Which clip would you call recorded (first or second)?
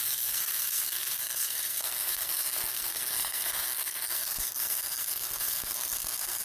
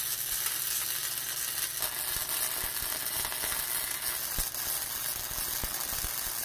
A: second